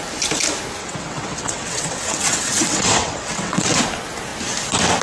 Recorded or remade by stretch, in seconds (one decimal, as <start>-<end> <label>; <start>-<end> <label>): 0.0-0.8 recorded; 0.8-3.8 remade; 3.8-5.0 recorded